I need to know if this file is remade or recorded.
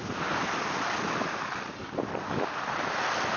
recorded